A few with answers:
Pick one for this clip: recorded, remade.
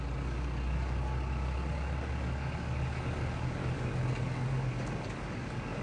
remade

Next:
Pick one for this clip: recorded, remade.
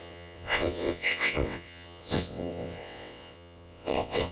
remade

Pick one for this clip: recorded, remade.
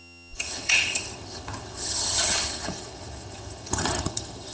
remade